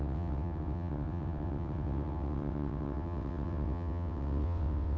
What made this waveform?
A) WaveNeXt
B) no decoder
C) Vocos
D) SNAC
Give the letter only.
A